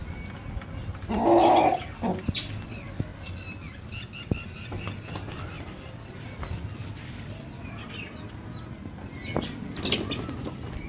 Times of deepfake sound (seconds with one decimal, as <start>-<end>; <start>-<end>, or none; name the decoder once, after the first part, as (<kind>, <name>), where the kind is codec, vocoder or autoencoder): none